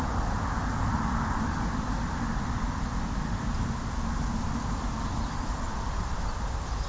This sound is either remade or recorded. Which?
recorded